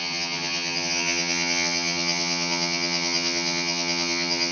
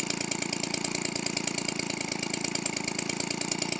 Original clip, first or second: second